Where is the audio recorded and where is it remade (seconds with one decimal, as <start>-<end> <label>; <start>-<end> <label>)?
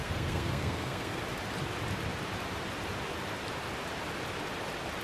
0.0-1.2 remade; 1.2-5.0 recorded